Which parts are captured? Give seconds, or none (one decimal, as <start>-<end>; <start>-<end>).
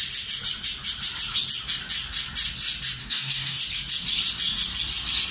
0.0-3.0; 3.6-5.3